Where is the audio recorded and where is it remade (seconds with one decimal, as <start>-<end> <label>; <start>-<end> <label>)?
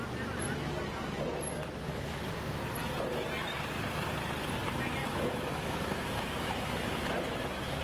0.0-1.8 recorded; 1.8-2.3 remade; 2.3-5.0 recorded; 5.0-7.8 remade